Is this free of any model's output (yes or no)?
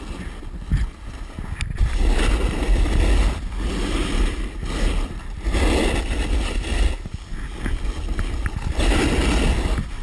yes